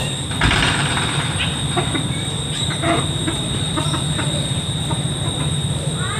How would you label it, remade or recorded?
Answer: remade